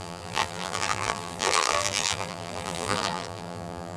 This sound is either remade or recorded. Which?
remade